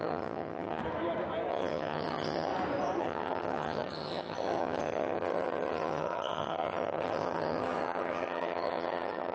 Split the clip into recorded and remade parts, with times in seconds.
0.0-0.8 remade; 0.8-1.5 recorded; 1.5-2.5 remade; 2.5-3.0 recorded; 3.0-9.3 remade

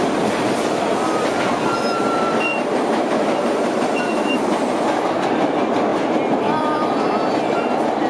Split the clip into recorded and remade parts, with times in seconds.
0.0-5.9 remade; 5.9-6.6 recorded; 6.6-8.1 remade

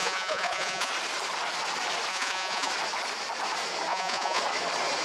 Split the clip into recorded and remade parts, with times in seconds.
0.0-0.9 remade; 0.9-2.1 recorded; 2.1-2.7 remade; 2.7-3.9 recorded; 3.9-4.4 remade; 4.4-5.0 recorded

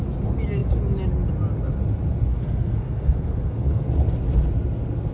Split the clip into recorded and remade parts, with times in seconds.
0.0-2.3 recorded; 2.3-3.9 remade; 3.9-5.1 recorded

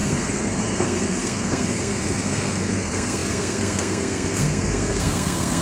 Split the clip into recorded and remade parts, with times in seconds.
0.0-5.6 remade